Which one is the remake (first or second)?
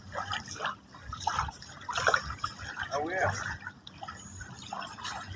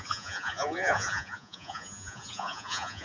second